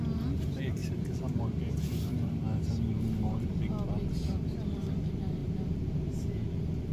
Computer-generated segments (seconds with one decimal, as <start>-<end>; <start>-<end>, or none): 0.8-1.6; 5.4-6.5